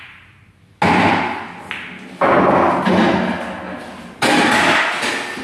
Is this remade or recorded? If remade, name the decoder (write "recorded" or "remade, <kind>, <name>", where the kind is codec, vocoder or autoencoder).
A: recorded